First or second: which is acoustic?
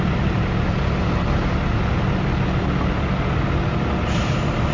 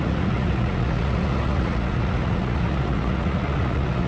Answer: first